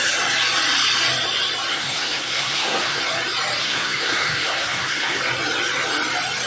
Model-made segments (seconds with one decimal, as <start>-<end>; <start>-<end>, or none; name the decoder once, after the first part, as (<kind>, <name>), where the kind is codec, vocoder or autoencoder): 1.7-3.0 (codec, SNAC); 3.6-5.2

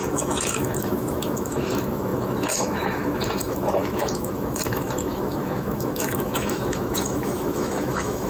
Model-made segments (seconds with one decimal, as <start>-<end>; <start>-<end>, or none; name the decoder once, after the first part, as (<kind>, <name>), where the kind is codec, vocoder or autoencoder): 0.0-8.3 (autoencoder, DAC-VAE)

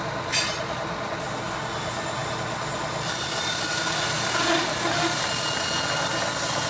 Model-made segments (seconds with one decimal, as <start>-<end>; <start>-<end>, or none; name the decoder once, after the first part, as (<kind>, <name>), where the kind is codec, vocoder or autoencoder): none

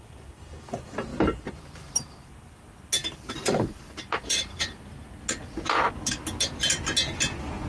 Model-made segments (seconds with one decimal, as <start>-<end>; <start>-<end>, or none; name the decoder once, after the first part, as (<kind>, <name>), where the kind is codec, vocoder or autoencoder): 1.1-2.3 (vocoder, BigVGAN v2); 3.0-4.5

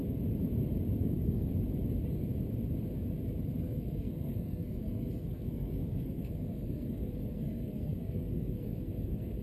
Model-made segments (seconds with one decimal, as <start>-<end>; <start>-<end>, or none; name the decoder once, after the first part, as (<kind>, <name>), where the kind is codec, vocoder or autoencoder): 1.0-1.5 (codec, SNAC); 3.6-9.4

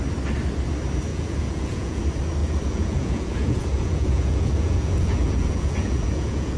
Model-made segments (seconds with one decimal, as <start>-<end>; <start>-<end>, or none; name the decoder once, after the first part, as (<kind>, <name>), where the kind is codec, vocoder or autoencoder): 1.1-2.0 (vocoder, Vocos); 2.4-6.6